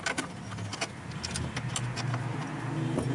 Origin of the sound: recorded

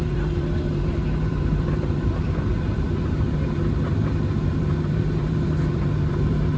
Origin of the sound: remade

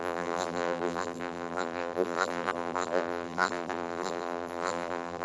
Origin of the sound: remade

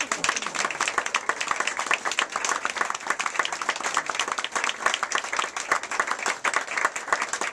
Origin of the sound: recorded